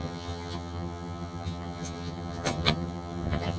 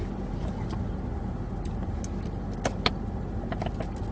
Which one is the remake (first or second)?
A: first